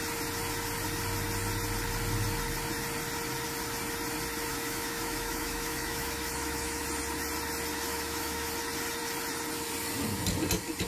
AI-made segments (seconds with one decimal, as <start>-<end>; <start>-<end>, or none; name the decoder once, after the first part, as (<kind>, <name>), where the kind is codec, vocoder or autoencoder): 4.5-6.8 (autoencoder, DAC-VAE); 7.9-8.5